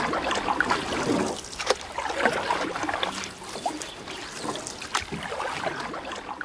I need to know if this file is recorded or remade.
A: recorded